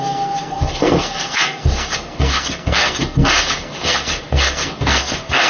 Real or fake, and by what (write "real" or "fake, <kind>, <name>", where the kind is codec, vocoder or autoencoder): fake, codec, SNAC